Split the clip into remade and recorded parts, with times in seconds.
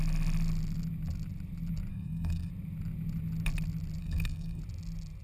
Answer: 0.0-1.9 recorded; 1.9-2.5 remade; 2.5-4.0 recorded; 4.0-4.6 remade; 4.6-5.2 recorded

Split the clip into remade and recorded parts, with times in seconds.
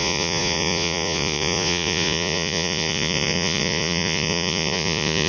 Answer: 0.0-5.3 remade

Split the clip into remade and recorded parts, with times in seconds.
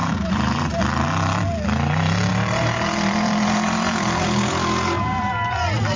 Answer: 0.0-0.8 remade; 0.8-2.3 recorded; 2.3-6.0 remade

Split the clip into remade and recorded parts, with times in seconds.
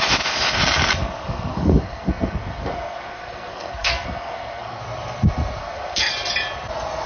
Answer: 0.0-1.0 recorded; 1.0-4.8 remade; 4.8-5.6 recorded; 5.6-6.1 remade; 6.1-7.1 recorded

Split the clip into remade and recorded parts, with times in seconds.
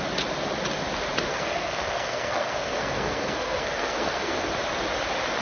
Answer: 0.0-1.3 recorded; 1.3-4.5 remade; 4.5-5.4 recorded